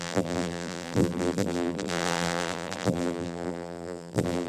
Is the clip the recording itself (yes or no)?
no